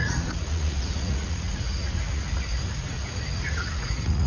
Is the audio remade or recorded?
remade